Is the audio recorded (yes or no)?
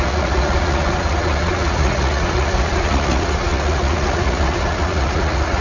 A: no